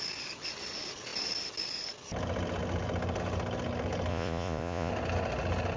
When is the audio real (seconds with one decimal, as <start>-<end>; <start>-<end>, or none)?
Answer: 0.0-4.1; 4.9-5.8